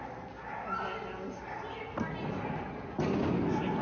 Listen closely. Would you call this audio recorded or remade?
recorded